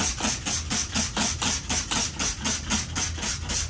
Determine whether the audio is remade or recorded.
recorded